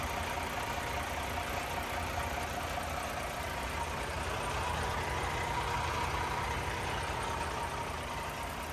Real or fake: real